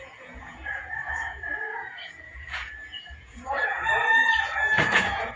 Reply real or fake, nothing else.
fake